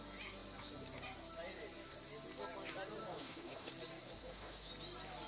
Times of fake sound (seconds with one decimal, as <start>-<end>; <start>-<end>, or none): 3.1-3.7; 4.2-4.7